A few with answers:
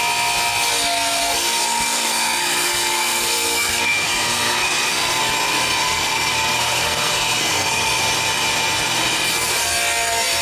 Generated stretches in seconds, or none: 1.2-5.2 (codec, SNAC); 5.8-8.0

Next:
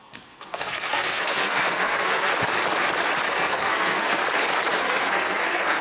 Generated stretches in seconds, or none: 0.0-2.3 (codec, SNAC); 3.3-4.2; 4.8-5.8